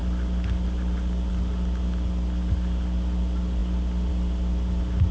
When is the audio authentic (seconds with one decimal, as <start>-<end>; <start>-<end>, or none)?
0.0-5.1